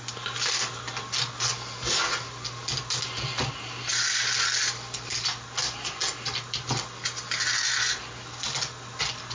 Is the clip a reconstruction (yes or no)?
no